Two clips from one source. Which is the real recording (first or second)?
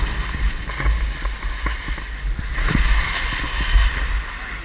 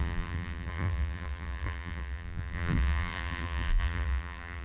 first